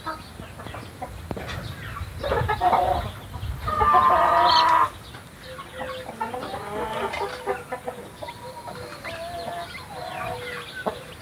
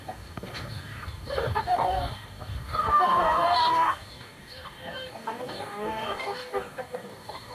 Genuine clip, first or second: first